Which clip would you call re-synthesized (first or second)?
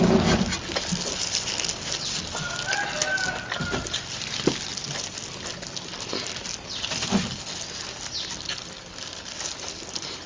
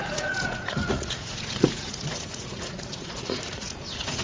second